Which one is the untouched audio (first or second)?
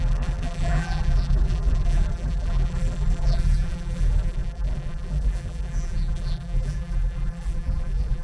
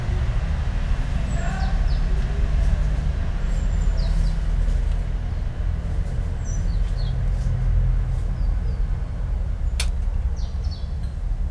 second